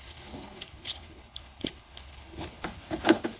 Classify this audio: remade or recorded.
remade